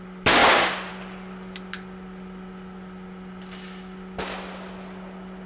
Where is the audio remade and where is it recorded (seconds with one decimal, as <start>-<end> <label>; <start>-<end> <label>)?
0.0-5.5 recorded